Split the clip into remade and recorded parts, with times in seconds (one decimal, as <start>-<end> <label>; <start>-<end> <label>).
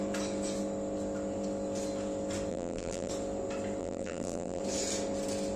0.0-2.5 recorded; 2.5-3.1 remade; 3.1-3.8 recorded; 3.8-4.6 remade; 4.6-5.6 recorded